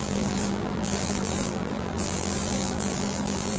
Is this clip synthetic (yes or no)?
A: yes